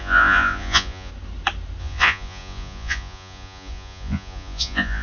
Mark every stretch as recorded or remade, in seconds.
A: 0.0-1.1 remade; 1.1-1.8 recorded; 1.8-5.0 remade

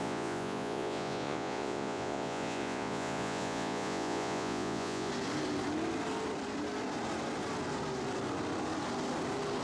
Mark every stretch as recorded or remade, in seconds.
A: 0.0-5.1 remade; 5.1-9.6 recorded

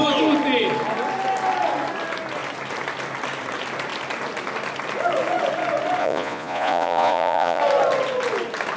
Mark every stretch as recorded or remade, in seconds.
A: 0.0-6.0 recorded; 6.0-7.6 remade; 7.6-8.8 recorded

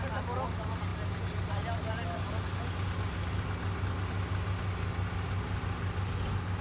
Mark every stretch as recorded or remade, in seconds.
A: 0.0-6.6 recorded